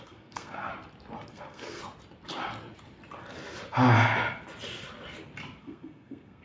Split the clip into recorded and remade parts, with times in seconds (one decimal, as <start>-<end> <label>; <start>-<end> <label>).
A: 0.0-0.7 remade; 0.7-1.3 recorded; 1.3-1.8 remade; 1.8-5.6 recorded; 5.6-6.4 remade